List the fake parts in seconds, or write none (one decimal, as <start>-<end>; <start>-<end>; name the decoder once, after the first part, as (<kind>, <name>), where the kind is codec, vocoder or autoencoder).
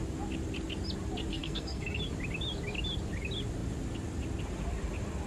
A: 1.3-2.0 (codec, SNAC)